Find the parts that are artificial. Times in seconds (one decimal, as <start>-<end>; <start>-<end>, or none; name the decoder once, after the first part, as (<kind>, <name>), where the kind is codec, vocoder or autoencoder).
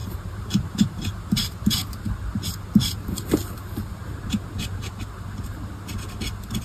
0.0-2.0 (vocoder, BigVGAN v2)